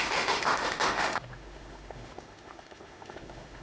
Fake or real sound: fake